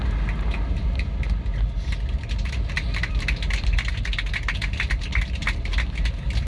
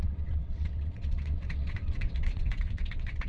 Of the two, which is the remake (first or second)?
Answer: second